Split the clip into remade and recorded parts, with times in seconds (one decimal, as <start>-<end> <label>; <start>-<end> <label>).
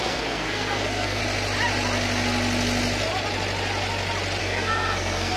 0.0-1.2 remade; 1.2-4.4 recorded; 4.4-5.4 remade